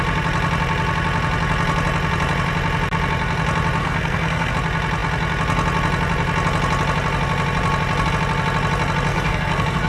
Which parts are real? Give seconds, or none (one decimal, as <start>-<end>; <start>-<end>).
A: 0.0-3.8; 4.5-9.1